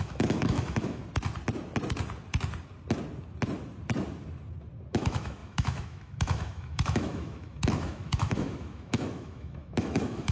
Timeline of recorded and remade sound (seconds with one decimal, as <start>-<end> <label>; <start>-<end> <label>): 0.0-1.0 remade; 1.0-4.9 recorded; 4.9-10.3 remade